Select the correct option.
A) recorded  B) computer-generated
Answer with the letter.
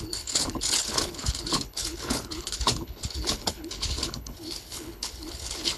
B